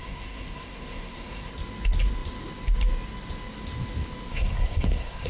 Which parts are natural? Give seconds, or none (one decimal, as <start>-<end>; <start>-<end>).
1.5-4.3